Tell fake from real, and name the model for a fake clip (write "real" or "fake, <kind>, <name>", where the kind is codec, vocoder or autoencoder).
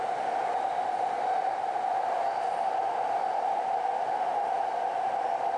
real